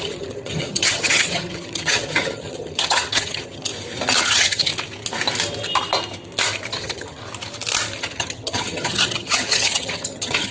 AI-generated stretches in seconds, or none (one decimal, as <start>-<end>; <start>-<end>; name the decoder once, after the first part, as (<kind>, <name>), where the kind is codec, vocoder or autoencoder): 0.0-3.7 (vocoder, HiFi-GAN); 4.2-4.7; 6.7-7.2; 8.0-10.5